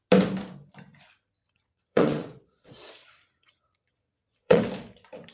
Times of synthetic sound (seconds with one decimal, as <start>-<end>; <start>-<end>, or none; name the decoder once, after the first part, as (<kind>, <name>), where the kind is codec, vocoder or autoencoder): 1.4-4.6 (vocoder, Vocos)